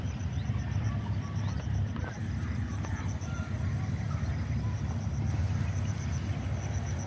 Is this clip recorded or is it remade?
recorded